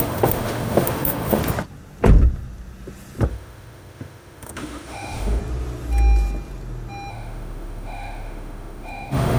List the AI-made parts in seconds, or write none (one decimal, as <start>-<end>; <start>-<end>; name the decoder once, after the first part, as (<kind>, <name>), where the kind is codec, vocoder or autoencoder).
0.0-1.4 (autoencoder, DAC-VAE); 3.3-5.4; 7.1-9.4